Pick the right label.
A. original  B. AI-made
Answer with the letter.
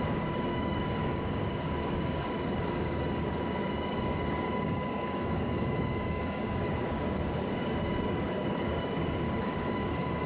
B